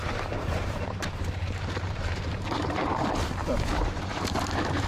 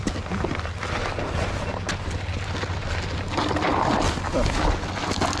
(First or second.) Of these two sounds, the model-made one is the first